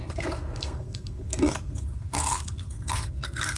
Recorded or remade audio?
remade